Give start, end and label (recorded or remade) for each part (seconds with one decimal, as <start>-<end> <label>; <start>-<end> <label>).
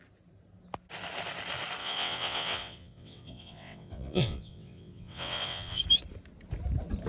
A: 0.0-1.8 recorded; 1.8-5.8 remade; 5.8-7.1 recorded